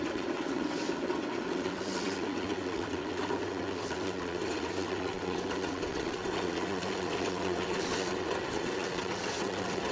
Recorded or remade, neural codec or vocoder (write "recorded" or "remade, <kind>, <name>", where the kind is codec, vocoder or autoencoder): remade, vocoder, WaveNeXt